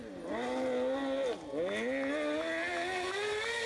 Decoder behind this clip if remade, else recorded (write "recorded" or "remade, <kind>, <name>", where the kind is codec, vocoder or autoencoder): recorded